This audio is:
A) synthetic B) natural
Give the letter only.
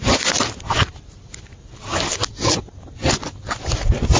B